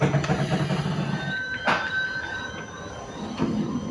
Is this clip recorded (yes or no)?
yes